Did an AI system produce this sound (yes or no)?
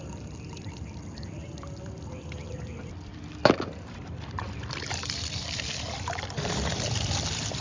yes